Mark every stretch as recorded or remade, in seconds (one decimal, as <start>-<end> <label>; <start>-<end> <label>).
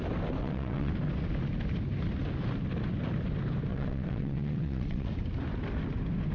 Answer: 0.0-0.4 recorded; 0.4-0.9 remade; 0.9-3.7 recorded; 3.7-5.1 remade; 5.1-6.3 recorded